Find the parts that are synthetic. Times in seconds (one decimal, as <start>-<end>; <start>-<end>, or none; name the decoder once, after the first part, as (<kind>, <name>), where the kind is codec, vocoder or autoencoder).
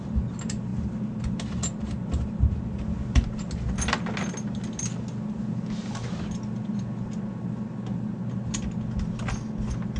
none